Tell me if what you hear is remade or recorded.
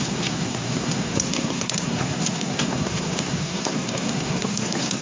remade